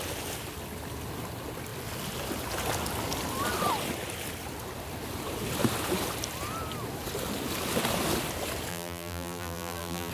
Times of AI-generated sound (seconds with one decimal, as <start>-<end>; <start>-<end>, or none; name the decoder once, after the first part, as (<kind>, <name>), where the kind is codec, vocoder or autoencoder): 8.7-10.1 (vocoder, BigVGAN v2)